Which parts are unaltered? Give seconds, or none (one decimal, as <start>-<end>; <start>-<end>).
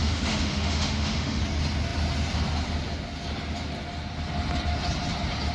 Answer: 1.4-5.5